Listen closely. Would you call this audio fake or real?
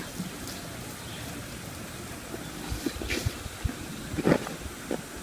real